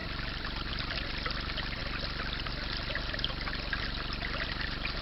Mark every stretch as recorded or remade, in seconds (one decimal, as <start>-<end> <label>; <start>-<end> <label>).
0.0-0.7 remade; 0.7-5.0 recorded